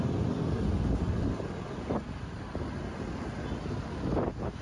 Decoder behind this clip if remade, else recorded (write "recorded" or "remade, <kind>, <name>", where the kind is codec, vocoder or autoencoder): recorded